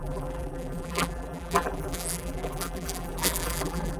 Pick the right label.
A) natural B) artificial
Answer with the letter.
B